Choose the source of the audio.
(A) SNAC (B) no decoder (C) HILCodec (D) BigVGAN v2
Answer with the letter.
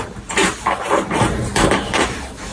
D